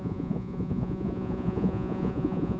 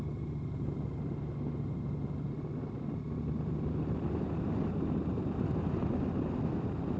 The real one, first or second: second